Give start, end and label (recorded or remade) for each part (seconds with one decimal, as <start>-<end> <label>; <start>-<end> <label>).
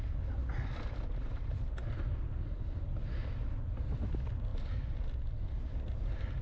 0.0-6.4 recorded